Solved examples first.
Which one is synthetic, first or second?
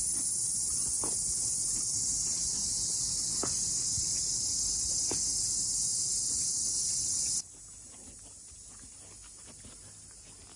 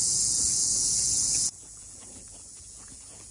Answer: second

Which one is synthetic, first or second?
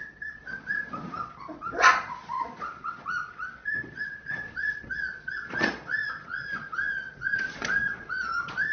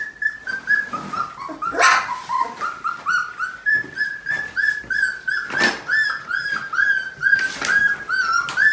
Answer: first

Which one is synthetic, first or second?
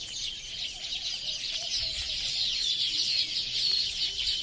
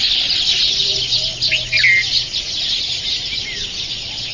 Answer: first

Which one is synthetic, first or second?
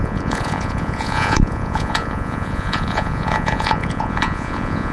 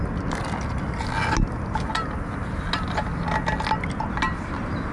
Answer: first